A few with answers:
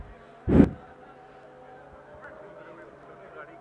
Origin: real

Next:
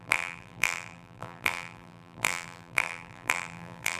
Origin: fake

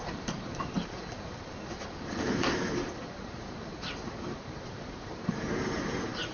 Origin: fake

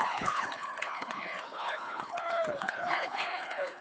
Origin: fake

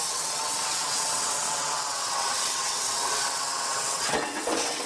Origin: fake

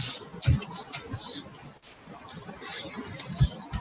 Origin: real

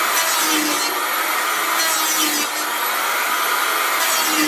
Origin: real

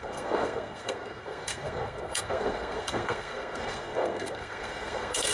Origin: fake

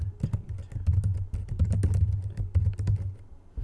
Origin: real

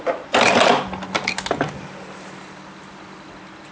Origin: real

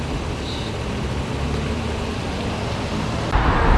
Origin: real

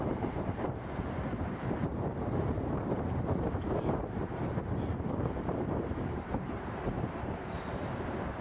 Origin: fake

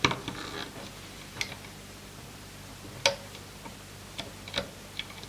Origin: real